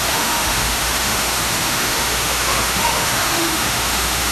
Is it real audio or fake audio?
fake